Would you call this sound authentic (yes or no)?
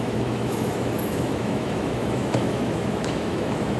no